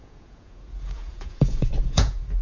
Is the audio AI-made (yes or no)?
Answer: yes